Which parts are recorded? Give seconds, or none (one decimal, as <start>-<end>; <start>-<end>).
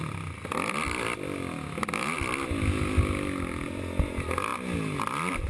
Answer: 0.0-5.5